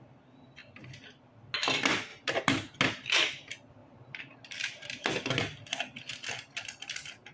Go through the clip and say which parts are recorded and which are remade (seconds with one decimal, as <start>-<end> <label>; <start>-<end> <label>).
0.0-2.1 recorded; 2.1-2.8 remade; 2.8-3.8 recorded; 3.8-5.1 remade; 5.1-7.3 recorded

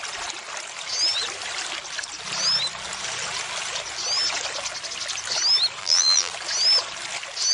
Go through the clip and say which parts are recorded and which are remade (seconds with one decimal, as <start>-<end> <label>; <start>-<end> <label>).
0.0-5.8 recorded; 5.8-6.3 remade; 6.3-7.5 recorded

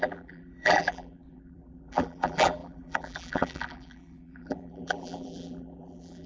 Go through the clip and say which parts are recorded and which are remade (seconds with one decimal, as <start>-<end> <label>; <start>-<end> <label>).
0.0-6.3 remade

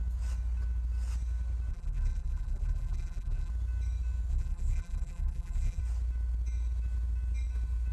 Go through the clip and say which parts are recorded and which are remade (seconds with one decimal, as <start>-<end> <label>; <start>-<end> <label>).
0.0-1.7 recorded; 1.7-3.5 remade; 3.5-4.3 recorded; 4.3-5.8 remade; 5.8-7.9 recorded

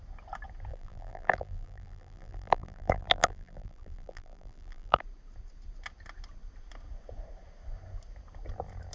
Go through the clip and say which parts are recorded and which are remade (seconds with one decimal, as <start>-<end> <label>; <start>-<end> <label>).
0.0-0.7 recorded; 0.7-5.0 remade; 5.0-8.9 recorded